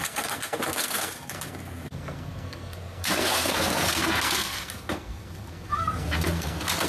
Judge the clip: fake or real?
fake